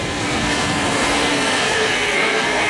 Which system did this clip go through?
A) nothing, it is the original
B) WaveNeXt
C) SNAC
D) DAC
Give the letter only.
C